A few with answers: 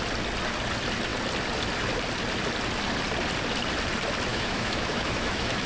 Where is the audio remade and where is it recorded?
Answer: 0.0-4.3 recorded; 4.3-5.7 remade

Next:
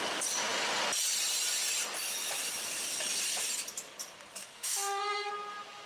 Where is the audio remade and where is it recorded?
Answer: 0.0-4.4 recorded; 4.4-5.3 remade; 5.3-5.9 recorded

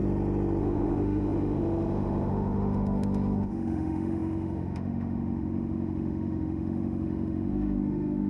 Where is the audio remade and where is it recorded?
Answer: 0.0-0.6 recorded; 0.6-8.3 remade

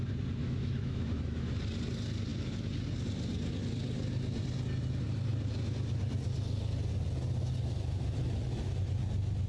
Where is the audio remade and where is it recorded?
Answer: 0.0-0.4 recorded; 0.4-1.5 remade; 1.5-9.5 recorded

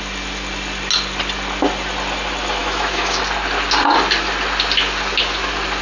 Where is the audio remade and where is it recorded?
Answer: 0.0-2.6 recorded; 2.6-3.2 remade; 3.2-5.8 recorded

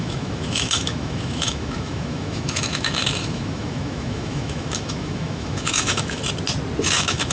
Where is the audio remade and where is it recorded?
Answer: 0.0-6.2 remade; 6.2-6.8 recorded; 6.8-7.3 remade

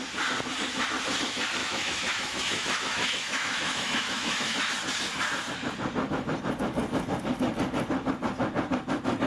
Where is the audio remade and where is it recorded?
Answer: 0.0-1.6 recorded; 1.6-4.7 remade; 4.7-9.3 recorded